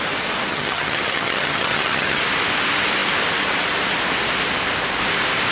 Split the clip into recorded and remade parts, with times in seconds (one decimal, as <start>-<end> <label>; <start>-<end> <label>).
0.0-0.5 recorded; 0.5-2.2 remade; 2.2-5.5 recorded